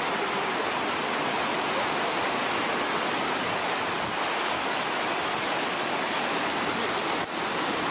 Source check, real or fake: real